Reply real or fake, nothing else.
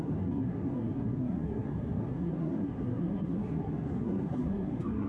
fake